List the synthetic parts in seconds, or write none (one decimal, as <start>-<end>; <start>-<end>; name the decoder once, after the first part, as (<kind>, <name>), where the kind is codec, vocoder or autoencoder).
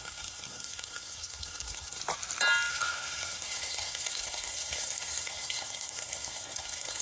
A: 0.0-2.0 (codec, SNAC); 2.7-7.0